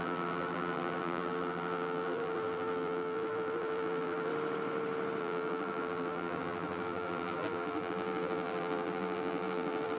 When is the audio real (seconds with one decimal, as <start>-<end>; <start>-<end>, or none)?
4.3-5.2